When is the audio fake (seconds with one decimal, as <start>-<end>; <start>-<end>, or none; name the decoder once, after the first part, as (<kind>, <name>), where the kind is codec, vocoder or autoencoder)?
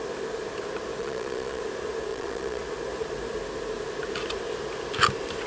1.0-1.6 (vocoder, Vocos); 2.1-2.6